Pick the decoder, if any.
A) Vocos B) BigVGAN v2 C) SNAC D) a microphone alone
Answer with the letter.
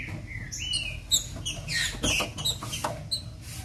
D